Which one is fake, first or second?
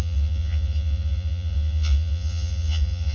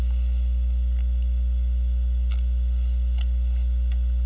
first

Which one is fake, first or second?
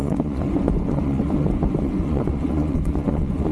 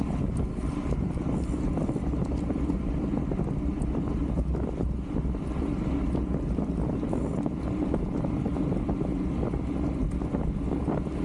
first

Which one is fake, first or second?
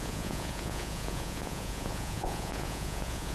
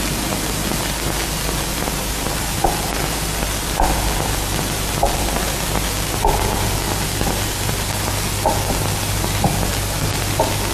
first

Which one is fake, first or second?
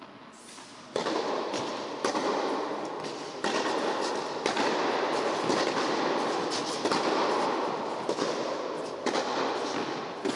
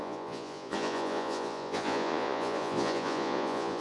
second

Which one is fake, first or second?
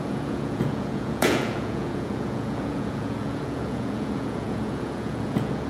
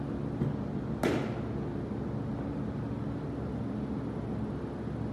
first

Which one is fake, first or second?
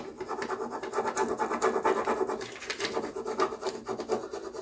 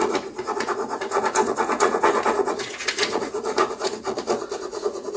second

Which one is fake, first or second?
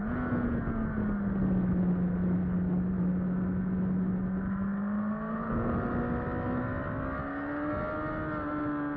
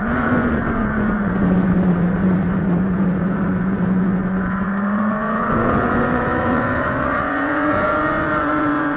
second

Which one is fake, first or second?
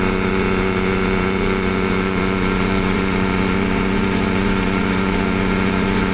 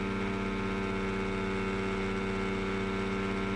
first